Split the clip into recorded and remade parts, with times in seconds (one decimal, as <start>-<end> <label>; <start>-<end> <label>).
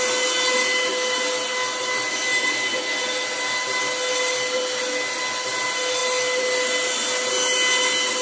0.0-8.2 recorded